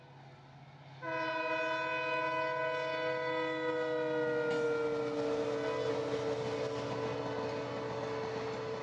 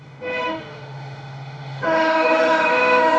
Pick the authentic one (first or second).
first